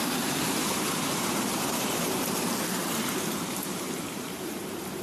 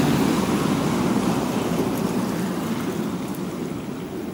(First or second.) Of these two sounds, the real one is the second